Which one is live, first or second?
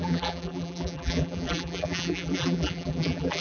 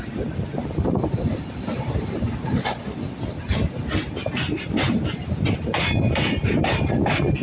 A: second